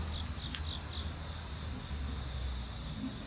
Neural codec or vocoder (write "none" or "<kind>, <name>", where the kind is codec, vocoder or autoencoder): none